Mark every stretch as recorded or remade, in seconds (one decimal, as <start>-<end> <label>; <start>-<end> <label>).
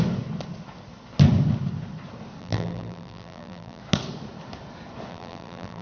0.0-2.4 recorded; 2.4-3.8 remade; 3.8-5.1 recorded; 5.1-5.8 remade